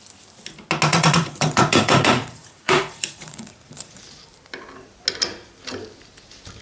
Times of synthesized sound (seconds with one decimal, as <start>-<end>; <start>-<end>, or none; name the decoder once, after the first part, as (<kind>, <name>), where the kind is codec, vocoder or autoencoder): 0.9-4.0 (vocoder, Vocos)